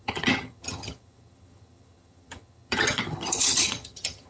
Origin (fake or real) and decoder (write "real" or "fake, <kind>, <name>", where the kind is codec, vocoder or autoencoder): fake, vocoder, HiFi-GAN